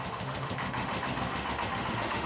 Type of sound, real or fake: fake